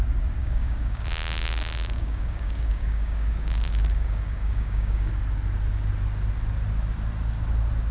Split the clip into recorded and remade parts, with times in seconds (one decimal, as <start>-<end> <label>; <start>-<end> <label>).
0.0-0.4 recorded; 0.4-5.1 remade; 5.1-7.9 recorded